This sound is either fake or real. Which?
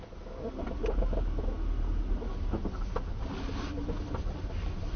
real